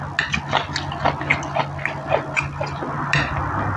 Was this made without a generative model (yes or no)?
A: yes